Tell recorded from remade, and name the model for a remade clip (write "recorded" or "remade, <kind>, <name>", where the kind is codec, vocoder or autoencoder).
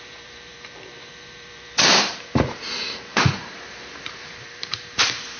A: remade, vocoder, BigVGAN v2